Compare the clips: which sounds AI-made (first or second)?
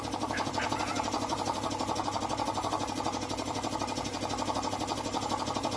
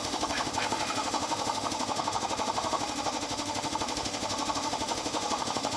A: second